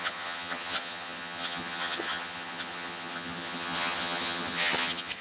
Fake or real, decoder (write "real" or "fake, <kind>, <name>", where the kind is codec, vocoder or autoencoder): fake, vocoder, HiFi-GAN